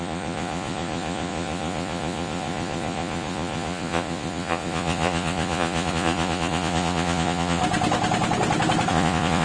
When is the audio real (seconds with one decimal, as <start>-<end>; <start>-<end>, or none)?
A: 7.6-8.9